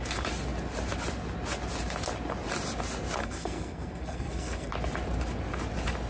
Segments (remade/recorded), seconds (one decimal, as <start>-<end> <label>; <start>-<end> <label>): 0.0-3.2 recorded; 3.2-4.7 remade; 4.7-6.1 recorded